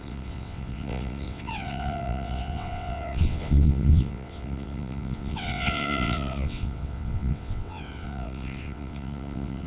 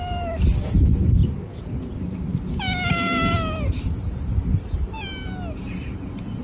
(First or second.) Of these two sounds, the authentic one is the second